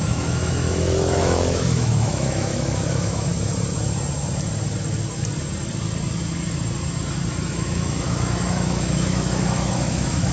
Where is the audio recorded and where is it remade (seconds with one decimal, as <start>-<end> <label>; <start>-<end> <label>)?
0.0-3.3 remade; 3.3-7.5 recorded; 7.5-10.3 remade